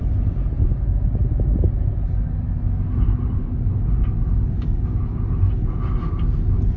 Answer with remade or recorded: recorded